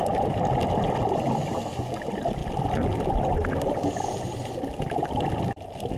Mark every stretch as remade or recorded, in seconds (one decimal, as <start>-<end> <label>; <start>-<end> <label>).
0.0-6.0 recorded

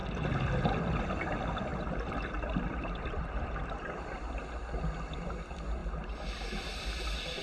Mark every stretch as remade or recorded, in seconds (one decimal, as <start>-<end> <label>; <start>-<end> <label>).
0.0-1.0 recorded; 1.0-5.8 remade; 5.8-6.7 recorded; 6.7-7.4 remade

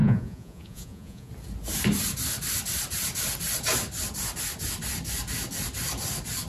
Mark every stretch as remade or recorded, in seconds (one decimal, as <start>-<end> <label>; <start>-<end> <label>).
0.0-1.3 remade; 1.3-6.5 recorded